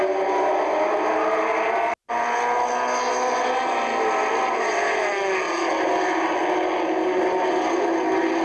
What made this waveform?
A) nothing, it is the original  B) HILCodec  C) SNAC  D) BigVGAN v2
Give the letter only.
A